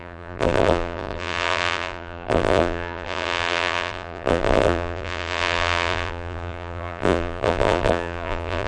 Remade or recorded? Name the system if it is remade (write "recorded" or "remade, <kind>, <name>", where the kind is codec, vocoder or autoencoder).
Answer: remade, vocoder, BigVGAN v2